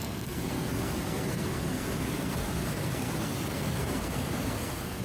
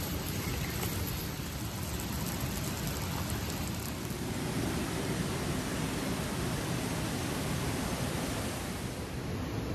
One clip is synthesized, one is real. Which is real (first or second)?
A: second